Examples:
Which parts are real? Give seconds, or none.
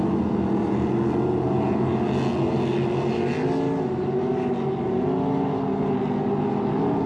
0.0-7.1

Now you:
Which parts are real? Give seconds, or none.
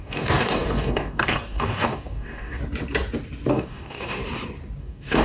2.6-3.5; 4.2-4.8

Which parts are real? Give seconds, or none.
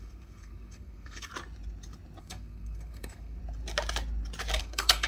1.3-2.2; 3.4-4.6